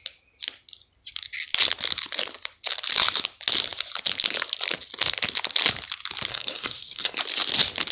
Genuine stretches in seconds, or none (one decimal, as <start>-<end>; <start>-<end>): 0.0-6.3; 7.2-7.9